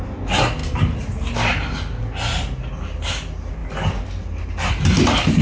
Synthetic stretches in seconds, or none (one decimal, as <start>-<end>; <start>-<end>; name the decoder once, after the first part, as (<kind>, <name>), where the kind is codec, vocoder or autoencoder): none

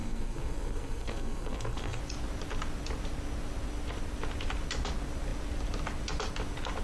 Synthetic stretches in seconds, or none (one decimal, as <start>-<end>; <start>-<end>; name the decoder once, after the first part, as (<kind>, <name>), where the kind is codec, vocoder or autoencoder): 0.0-2.0 (codec, SNAC)

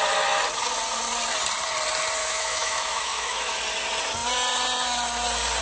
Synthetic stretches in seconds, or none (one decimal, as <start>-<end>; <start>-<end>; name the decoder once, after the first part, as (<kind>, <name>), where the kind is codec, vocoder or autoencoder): 2.2-3.6 (autoencoder, DAC-VAE)

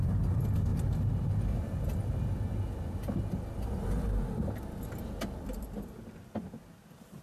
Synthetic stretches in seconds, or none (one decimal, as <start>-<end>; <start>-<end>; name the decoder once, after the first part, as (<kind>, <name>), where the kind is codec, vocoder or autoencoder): none